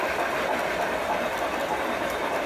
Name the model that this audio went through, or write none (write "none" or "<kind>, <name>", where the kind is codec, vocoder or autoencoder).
none